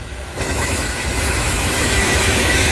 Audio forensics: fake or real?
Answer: fake